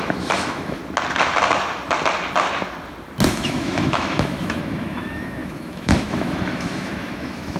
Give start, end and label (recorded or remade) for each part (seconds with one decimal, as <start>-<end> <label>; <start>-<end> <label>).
0.0-0.8 remade; 0.8-3.3 recorded; 3.3-7.6 remade